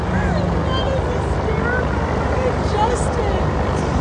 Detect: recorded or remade recorded